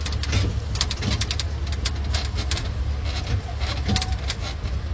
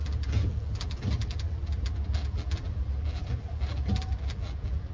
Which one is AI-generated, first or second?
second